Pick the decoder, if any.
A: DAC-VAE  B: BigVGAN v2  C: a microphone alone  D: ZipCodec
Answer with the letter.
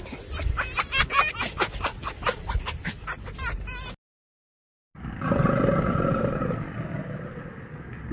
C